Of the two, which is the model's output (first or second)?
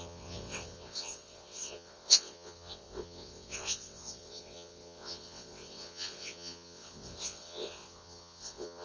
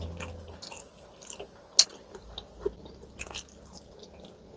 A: first